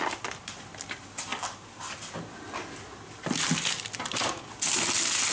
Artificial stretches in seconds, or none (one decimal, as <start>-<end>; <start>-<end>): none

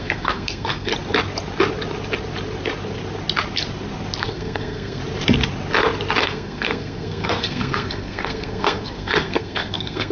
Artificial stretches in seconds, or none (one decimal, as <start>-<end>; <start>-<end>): 0.0-0.9; 4.2-5.0; 6.2-10.1

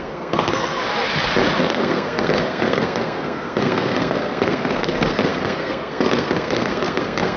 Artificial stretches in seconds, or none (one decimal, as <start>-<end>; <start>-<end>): 0.0-0.8; 1.6-7.4

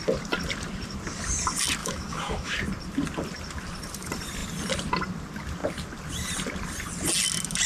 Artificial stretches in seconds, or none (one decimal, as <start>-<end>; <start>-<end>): 1.8-2.5

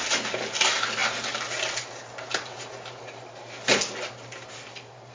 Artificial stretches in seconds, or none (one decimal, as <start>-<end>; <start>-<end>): none

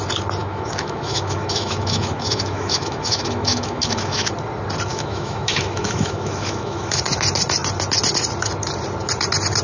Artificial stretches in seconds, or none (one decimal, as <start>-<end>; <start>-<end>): 0.4-4.3; 4.9-7.0

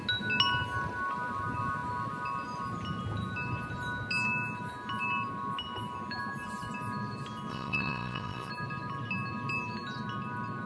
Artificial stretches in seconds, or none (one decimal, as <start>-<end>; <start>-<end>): 7.5-8.5

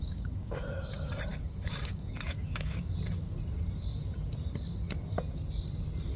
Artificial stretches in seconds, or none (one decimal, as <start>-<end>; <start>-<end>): 0.0-0.6; 1.3-2.8